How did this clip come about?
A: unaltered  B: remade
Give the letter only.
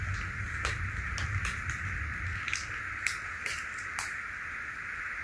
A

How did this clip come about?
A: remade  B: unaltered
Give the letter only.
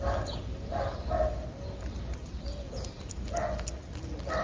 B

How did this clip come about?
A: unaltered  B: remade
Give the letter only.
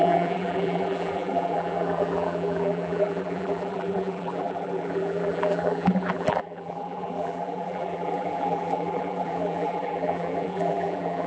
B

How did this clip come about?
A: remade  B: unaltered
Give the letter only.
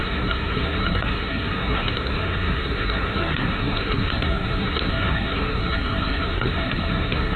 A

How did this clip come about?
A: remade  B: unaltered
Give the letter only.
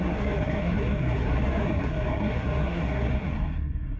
A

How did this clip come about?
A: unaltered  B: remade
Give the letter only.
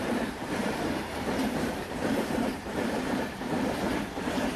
B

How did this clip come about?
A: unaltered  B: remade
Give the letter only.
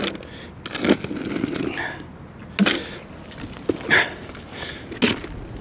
A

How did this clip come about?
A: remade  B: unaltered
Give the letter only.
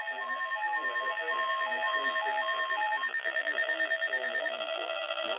A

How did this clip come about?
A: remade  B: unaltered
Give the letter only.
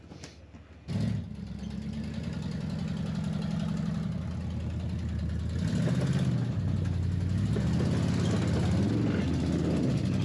B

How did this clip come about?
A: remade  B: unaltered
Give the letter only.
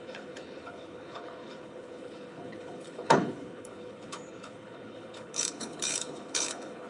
A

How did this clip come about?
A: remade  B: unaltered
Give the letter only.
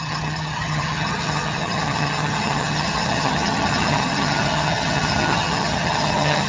A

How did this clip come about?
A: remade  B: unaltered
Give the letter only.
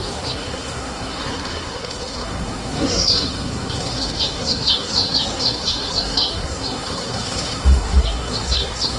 A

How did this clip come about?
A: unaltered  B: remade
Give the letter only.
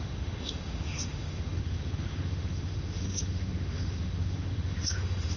B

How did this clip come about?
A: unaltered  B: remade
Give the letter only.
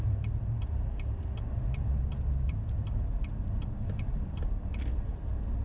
A